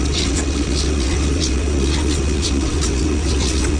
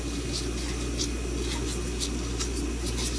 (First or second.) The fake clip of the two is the first